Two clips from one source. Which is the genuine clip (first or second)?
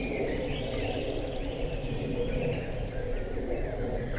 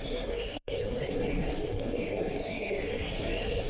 first